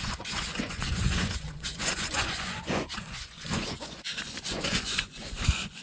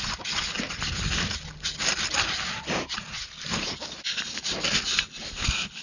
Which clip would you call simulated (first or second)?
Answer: first